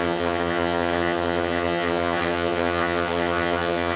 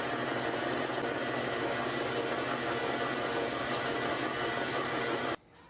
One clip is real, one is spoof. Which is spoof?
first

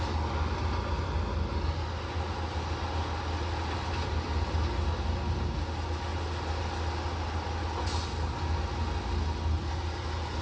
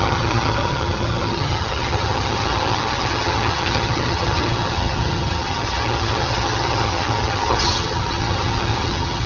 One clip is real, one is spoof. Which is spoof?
second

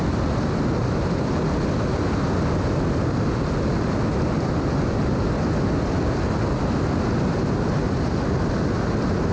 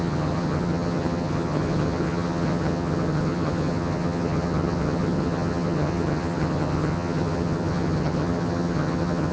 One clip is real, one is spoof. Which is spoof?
second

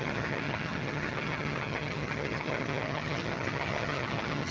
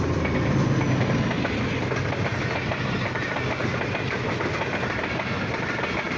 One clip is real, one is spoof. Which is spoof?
first